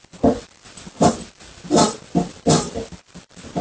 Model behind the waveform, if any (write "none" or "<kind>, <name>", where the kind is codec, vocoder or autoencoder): none